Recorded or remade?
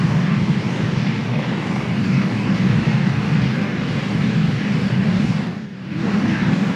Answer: remade